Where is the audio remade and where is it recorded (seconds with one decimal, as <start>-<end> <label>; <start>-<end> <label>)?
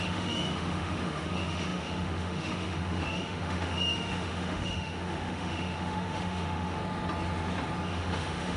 0.0-6.8 remade; 6.8-7.9 recorded; 7.9-8.6 remade